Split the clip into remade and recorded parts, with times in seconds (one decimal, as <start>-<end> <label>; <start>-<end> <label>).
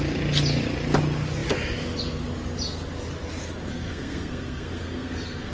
0.0-3.7 recorded; 3.7-5.5 remade